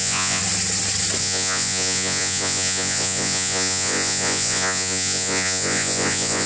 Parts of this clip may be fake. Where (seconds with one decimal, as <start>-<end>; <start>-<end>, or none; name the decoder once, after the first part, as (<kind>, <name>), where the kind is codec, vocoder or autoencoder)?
0.0-0.4 (vocoder, Vocos); 1.2-6.5